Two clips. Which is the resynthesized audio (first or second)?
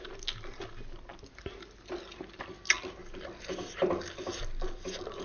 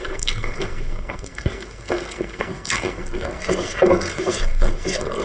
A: second